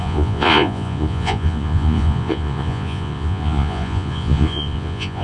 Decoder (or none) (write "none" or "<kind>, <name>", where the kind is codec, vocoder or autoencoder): vocoder, Vocos